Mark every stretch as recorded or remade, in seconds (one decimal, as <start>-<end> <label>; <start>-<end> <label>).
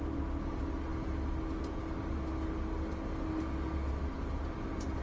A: 0.0-5.0 recorded